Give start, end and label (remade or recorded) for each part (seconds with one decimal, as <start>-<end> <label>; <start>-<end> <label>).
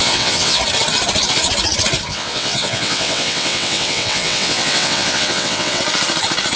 0.0-0.6 remade; 0.6-2.1 recorded; 2.1-5.8 remade; 5.8-6.6 recorded